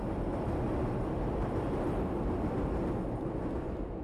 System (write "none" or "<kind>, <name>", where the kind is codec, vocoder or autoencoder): none